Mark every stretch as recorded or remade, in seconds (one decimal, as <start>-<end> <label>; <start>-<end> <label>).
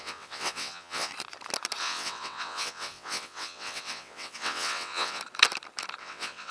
0.0-1.1 remade; 1.1-1.8 recorded; 1.8-5.2 remade; 5.2-6.0 recorded; 6.0-6.5 remade